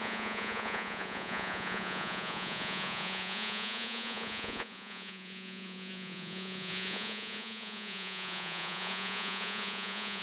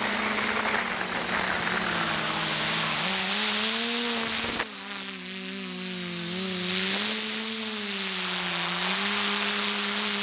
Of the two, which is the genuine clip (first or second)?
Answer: second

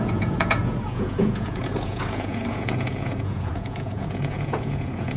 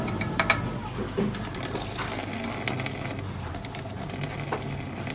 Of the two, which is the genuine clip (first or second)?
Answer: second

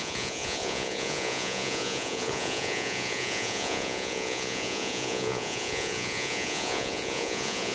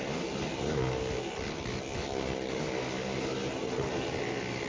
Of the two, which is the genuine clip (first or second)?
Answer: second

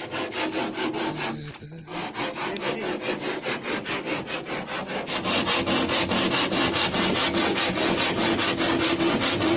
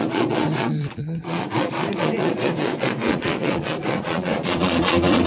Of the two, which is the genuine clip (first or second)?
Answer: first